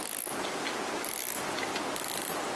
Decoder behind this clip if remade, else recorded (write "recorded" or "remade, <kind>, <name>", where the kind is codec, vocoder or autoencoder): recorded